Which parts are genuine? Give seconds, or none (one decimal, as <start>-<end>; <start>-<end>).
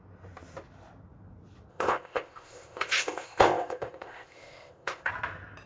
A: 0.0-1.7; 5.1-5.7